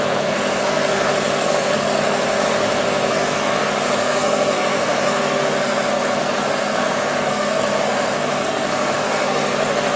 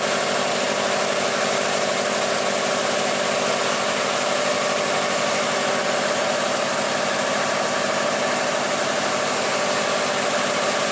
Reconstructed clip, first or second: first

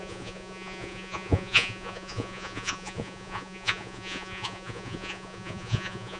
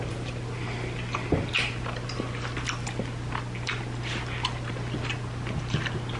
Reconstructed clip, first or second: first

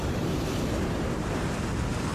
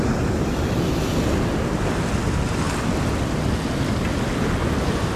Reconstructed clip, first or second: first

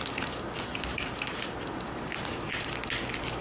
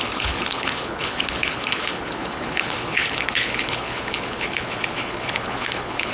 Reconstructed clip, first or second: second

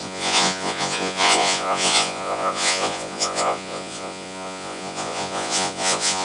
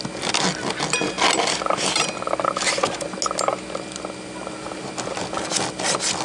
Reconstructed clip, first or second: first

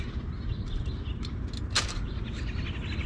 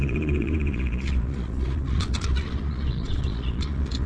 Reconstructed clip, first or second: second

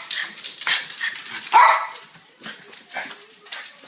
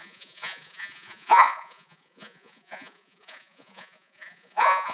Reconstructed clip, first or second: second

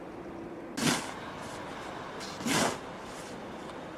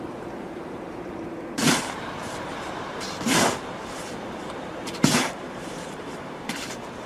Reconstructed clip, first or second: second